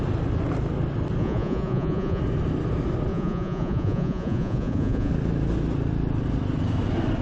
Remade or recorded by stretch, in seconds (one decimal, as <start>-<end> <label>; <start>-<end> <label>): 0.0-1.2 recorded; 1.2-2.2 remade; 2.2-3.1 recorded; 3.1-5.1 remade; 5.1-7.2 recorded